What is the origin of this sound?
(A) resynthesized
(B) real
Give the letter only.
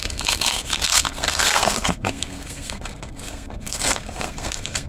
A